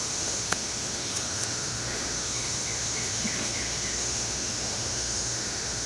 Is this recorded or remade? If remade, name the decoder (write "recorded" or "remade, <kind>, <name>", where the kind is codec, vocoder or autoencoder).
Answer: remade, autoencoder, DAC-VAE